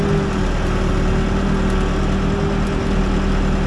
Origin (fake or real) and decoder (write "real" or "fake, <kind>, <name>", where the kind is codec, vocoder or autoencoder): real